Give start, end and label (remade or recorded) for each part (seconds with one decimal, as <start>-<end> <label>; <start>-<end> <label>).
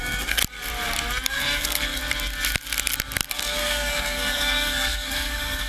0.0-0.4 remade; 0.4-1.3 recorded; 1.3-2.0 remade; 2.0-3.3 recorded; 3.3-5.7 remade